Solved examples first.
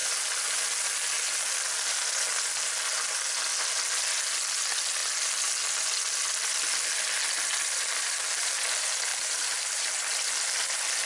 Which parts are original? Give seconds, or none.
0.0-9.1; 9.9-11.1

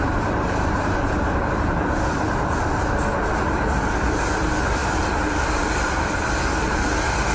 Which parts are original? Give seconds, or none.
0.0-4.8; 6.1-7.3

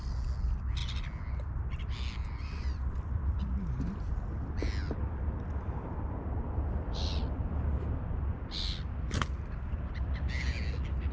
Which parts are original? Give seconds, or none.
0.0-11.1

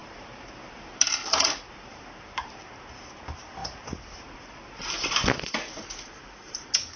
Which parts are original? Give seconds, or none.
2.7-3.6; 6.6-7.0

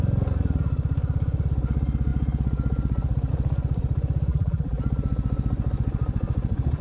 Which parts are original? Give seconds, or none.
0.0-4.3; 4.8-6.8

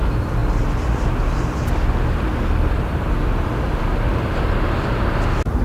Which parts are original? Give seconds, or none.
0.0-5.6

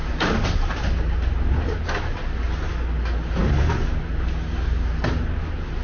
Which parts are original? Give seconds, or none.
0.0-5.8

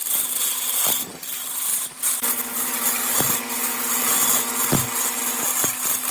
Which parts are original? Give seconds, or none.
0.0-1.7; 4.0-6.1